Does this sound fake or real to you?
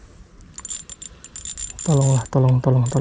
real